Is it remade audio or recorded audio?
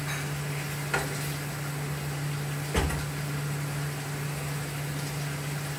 recorded